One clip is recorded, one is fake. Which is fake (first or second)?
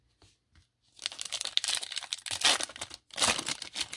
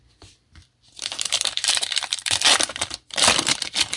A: second